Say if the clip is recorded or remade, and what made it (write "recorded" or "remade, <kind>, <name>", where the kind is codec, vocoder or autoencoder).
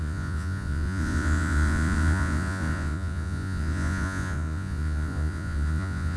remade, vocoder, Vocos